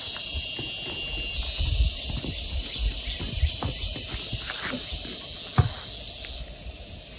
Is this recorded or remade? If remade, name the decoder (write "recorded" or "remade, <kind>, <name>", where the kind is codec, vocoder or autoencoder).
recorded